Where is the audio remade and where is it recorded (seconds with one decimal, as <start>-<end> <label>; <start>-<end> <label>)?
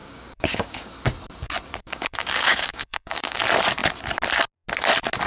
0.0-0.9 remade; 0.9-1.8 recorded; 1.8-3.4 remade; 3.4-5.3 recorded